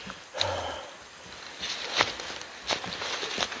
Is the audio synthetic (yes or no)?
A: no